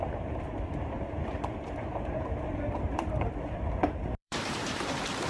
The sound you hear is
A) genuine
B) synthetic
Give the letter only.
B